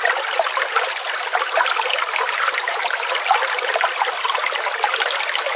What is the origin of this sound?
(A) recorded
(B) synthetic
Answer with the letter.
A